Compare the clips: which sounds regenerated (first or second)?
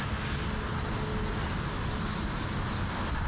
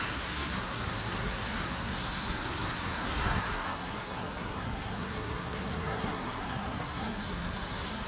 second